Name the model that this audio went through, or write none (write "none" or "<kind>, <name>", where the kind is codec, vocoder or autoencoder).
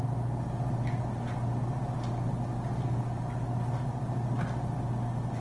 none